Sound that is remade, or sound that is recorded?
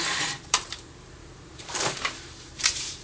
remade